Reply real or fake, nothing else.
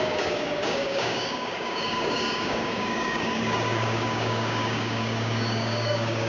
fake